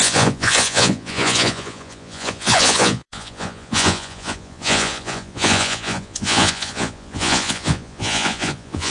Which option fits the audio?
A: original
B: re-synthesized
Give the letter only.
B